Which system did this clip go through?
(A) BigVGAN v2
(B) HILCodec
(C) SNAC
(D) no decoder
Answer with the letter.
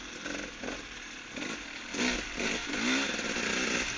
D